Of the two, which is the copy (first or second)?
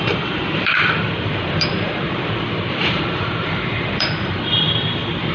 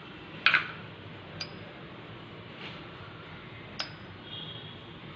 first